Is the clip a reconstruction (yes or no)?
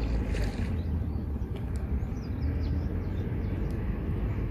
no